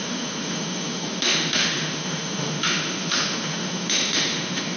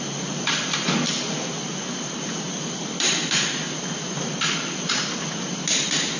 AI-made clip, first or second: first